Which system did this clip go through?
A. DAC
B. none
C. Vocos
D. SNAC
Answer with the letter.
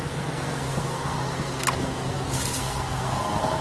D